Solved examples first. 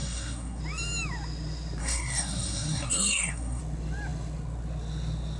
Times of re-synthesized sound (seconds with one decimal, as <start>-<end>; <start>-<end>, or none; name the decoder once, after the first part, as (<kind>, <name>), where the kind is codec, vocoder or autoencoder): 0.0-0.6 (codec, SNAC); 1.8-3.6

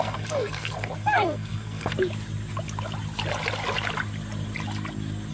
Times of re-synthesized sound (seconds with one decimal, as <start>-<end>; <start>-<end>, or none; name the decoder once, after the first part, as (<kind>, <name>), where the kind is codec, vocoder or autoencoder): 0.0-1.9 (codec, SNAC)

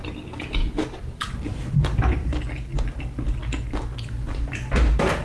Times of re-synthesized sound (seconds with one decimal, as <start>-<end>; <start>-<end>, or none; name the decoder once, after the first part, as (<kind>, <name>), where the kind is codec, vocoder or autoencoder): 0.6-1.4 (vocoder, BigVGAN v2)